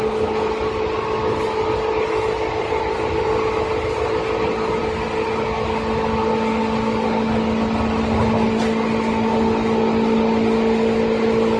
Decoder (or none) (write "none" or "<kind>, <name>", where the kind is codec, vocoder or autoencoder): none